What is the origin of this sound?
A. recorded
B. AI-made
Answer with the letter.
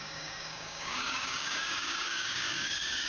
B